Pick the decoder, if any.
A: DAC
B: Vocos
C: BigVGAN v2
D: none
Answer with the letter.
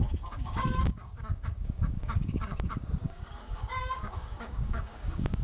A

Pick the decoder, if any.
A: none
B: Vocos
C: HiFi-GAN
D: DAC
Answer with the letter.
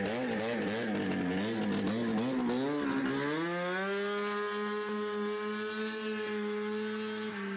A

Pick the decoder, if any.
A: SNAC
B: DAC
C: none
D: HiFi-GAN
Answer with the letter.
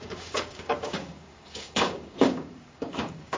B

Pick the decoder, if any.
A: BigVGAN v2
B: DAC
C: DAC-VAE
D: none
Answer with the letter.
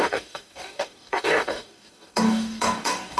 B